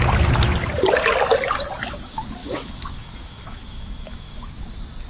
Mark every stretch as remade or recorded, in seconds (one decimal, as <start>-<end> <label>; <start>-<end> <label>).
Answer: 0.0-2.4 recorded; 2.4-4.6 remade; 4.6-5.1 recorded

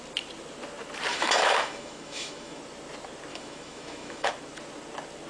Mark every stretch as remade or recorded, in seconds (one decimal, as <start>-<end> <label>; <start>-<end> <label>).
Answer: 0.0-1.1 recorded; 1.1-2.6 remade; 2.6-3.3 recorded; 3.3-4.3 remade; 4.3-5.3 recorded